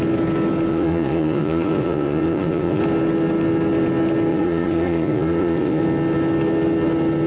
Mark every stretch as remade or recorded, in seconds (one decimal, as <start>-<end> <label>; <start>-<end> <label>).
0.0-0.7 recorded; 0.7-2.8 remade; 2.8-4.3 recorded; 4.3-5.8 remade; 5.8-7.3 recorded